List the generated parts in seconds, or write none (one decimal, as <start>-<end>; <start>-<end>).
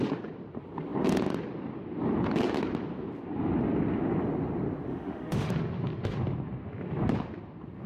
4.9-5.5